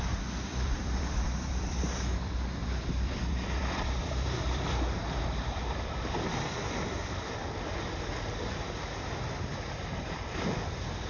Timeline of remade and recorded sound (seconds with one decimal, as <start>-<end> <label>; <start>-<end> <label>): 0.0-0.5 recorded; 0.5-1.8 remade; 1.8-2.6 recorded; 2.6-7.5 remade; 7.5-9.5 recorded; 9.5-10.5 remade; 10.5-11.1 recorded